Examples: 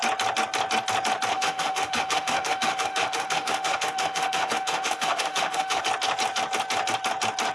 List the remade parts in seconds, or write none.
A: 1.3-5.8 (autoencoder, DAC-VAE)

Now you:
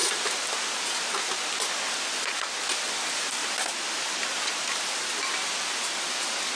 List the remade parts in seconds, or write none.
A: none

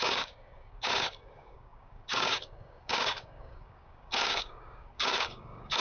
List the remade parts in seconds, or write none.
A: 0.0-5.8 (codec, DAC)

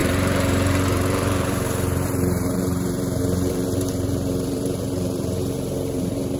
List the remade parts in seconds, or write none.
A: 0.0-6.4 (vocoder, BigVGAN v2)

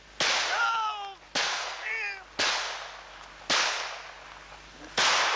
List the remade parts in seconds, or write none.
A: 1.4-1.9 (codec, SNAC)

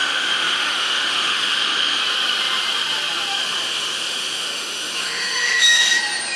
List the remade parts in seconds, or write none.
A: 0.0-2.0 (autoencoder, DAC-VAE); 3.3-5.9